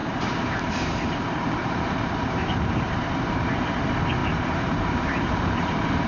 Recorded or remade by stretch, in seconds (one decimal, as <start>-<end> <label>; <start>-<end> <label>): 0.0-3.7 remade; 3.7-4.2 recorded; 4.2-6.1 remade